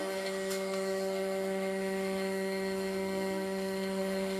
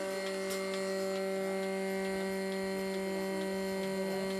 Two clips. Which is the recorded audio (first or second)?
second